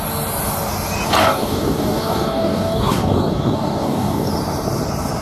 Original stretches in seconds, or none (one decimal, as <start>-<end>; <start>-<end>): 0.0-1.2; 4.3-5.2